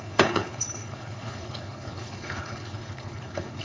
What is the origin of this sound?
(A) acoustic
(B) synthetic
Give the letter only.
B